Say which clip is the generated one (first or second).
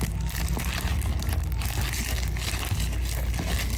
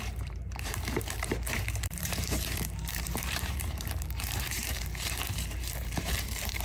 second